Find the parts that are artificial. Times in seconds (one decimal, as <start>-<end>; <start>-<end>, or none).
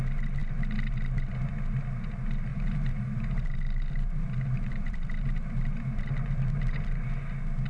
2.5-7.1